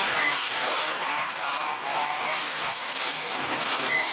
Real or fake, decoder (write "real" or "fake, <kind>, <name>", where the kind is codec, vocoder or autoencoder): fake, codec, DAC